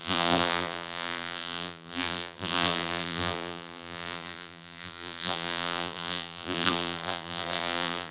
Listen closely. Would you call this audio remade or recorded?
remade